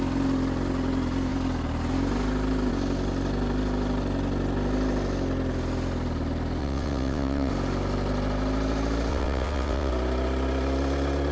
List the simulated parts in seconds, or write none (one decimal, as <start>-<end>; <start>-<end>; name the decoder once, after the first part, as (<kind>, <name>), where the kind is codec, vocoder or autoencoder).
6.6-7.5 (vocoder, WaveNeXt); 9.1-9.9